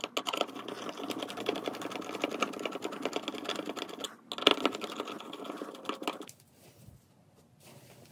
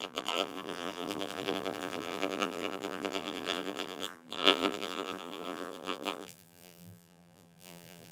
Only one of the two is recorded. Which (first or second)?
first